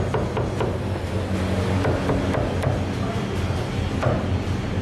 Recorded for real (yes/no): yes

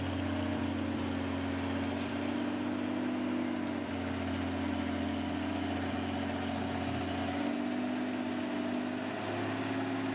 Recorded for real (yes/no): yes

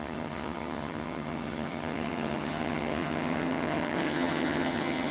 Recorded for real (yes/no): no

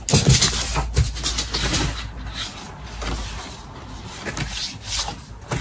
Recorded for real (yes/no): yes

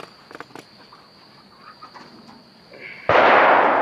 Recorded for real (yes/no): yes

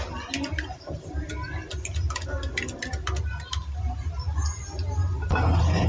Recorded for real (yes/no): yes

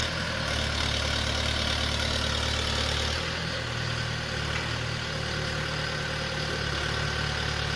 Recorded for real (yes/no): yes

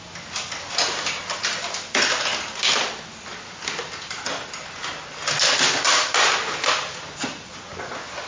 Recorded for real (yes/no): yes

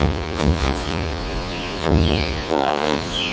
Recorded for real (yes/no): no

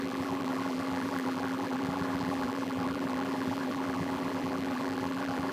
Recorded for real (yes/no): no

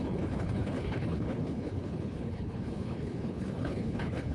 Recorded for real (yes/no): no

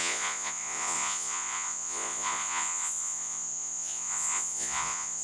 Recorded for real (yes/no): no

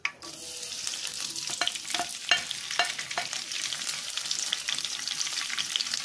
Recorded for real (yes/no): yes